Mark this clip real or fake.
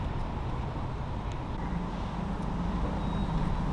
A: real